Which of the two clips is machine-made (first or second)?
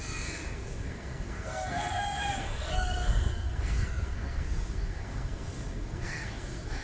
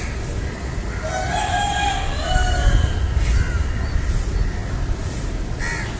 first